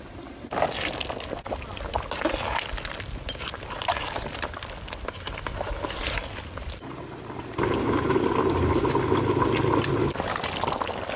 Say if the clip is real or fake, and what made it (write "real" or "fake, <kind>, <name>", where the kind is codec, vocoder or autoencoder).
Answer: real